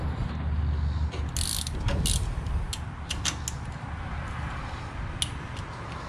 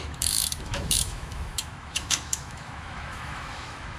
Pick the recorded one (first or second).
first